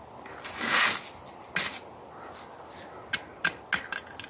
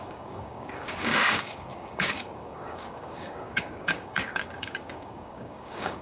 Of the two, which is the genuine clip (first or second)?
first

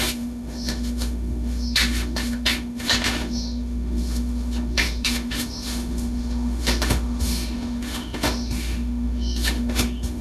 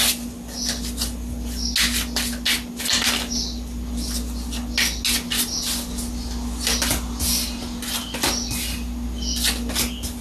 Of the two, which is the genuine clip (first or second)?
second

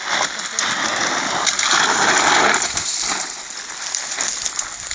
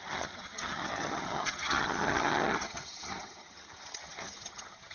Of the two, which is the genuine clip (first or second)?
first